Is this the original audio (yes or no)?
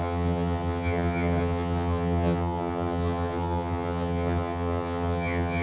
no